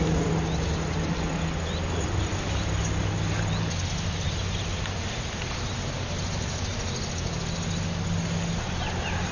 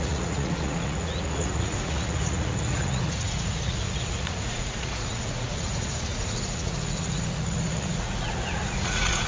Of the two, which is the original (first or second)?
first